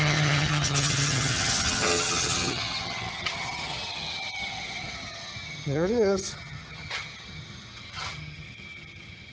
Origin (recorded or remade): remade